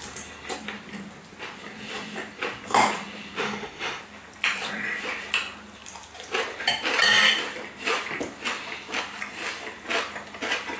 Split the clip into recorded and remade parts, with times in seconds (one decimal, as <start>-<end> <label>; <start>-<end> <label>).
0.0-3.4 recorded; 3.4-4.0 remade; 4.0-10.8 recorded